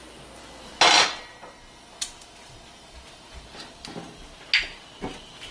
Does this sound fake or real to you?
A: real